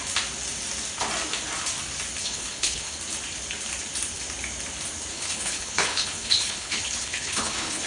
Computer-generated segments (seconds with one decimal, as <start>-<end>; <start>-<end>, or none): 2.2-3.0; 5.1-7.9